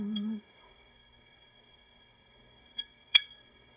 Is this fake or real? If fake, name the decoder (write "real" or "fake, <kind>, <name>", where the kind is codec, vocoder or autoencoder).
fake, codec, SNAC